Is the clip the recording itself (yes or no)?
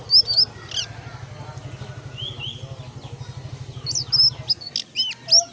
yes